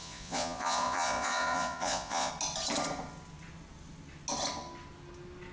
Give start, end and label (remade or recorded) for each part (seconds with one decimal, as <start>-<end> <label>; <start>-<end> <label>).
0.0-2.3 remade; 2.3-5.5 recorded